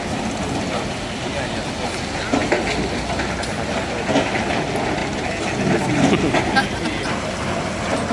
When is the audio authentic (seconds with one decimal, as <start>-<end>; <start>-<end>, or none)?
0.0-8.1